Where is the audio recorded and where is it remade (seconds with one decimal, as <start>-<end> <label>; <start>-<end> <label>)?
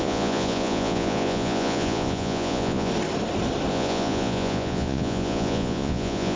0.0-2.9 remade; 2.9-3.7 recorded; 3.7-6.4 remade